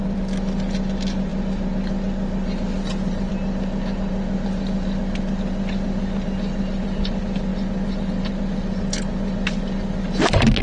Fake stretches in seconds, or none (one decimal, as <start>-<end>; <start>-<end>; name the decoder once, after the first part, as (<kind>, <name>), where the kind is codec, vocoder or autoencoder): none